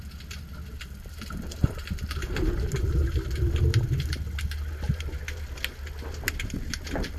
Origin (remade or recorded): recorded